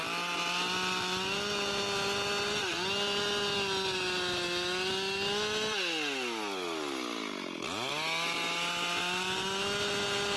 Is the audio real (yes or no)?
yes